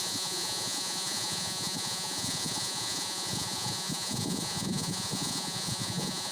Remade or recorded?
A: remade